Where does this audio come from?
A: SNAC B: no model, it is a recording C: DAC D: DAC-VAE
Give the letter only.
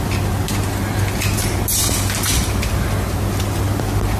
B